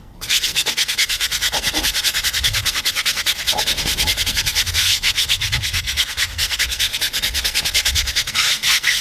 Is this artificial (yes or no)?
yes